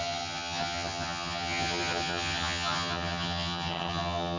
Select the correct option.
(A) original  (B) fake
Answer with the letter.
B